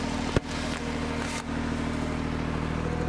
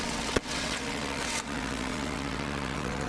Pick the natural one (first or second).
first